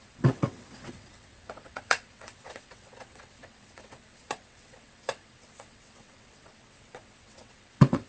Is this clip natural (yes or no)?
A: no